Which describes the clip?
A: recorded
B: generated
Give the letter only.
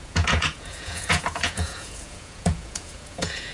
B